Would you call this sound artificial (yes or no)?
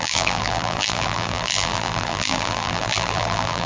yes